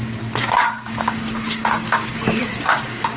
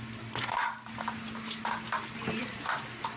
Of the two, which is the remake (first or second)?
first